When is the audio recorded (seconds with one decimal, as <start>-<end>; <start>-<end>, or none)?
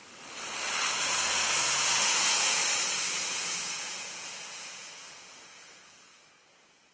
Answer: 0.0-0.9; 2.6-3.1